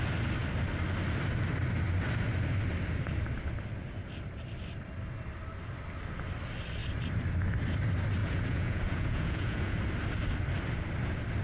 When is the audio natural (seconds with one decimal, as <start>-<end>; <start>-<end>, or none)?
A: 0.0-8.2; 9.8-11.4